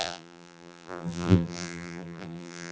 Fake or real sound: fake